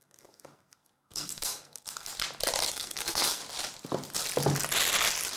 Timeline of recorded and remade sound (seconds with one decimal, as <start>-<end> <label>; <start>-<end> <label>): 0.0-2.1 remade; 2.1-2.7 recorded; 2.7-3.4 remade; 3.4-5.4 recorded